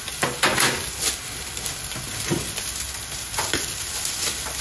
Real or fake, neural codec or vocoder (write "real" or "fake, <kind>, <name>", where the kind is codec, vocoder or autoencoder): real